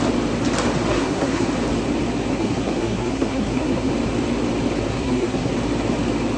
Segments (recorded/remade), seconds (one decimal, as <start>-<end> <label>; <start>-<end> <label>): 0.0-0.9 recorded; 0.9-1.5 remade; 1.5-2.3 recorded; 2.3-3.9 remade; 3.9-4.9 recorded; 4.9-5.5 remade; 5.5-6.4 recorded